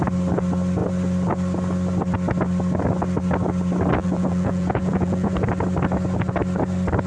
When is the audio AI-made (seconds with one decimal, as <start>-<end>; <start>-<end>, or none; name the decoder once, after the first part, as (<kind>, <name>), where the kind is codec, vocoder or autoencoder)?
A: 4.0-5.5 (vocoder, Vocos)